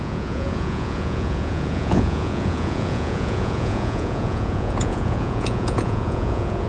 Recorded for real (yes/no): no